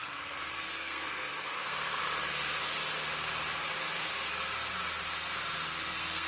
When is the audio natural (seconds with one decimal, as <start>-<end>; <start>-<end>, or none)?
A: 2.0-5.8

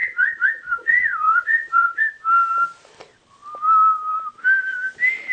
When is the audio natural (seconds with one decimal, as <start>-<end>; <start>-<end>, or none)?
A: 2.0-5.3

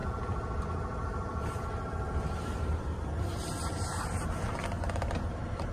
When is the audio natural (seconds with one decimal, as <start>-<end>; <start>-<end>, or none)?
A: 0.0-0.6; 1.3-4.7